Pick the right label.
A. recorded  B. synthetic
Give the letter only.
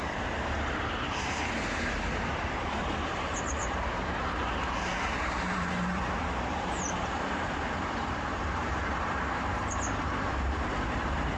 B